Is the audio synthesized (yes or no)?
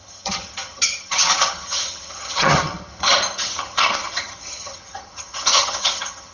yes